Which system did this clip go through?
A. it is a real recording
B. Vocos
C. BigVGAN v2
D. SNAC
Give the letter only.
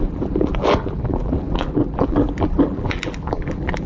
C